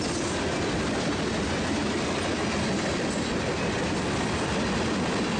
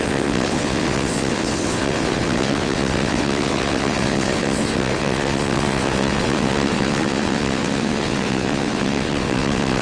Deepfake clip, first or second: second